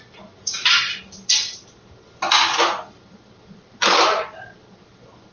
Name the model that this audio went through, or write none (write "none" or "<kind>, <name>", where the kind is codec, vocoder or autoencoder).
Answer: none